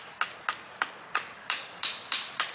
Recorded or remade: recorded